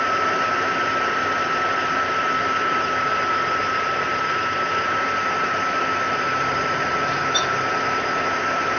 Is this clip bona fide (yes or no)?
no